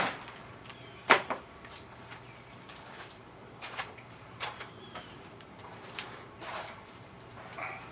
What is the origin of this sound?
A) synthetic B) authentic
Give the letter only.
A